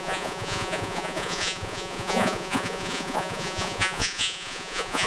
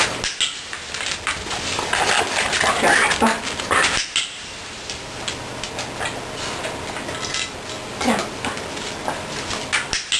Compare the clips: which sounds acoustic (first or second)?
second